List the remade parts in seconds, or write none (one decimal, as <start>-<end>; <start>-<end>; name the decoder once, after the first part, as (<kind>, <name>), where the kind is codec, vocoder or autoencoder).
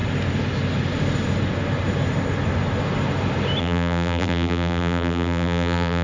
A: 3.6-6.0 (vocoder, BigVGAN v2)